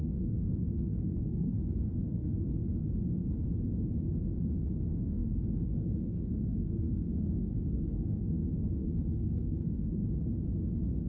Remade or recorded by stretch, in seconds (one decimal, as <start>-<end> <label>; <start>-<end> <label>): 0.0-2.6 remade; 2.6-4.8 recorded; 4.8-10.0 remade; 10.0-11.1 recorded